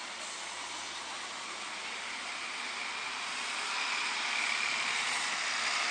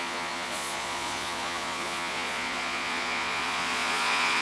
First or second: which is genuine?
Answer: first